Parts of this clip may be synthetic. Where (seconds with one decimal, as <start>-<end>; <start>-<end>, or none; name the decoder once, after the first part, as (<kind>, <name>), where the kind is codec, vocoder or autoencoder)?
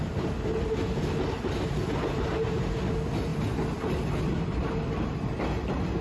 none